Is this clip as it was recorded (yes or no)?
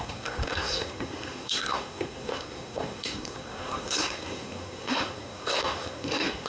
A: no